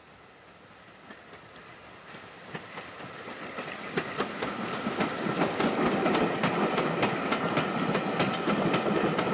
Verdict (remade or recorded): recorded